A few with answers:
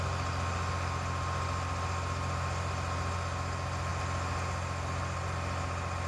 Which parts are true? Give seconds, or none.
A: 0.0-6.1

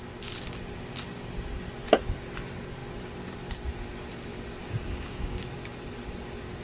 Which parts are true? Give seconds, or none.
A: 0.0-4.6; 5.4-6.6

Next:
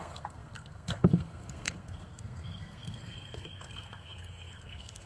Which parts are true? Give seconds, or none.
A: none